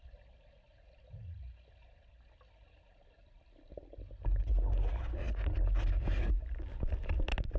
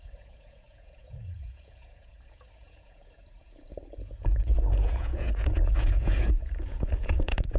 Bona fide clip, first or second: first